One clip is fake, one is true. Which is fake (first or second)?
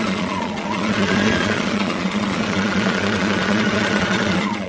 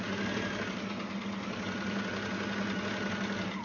first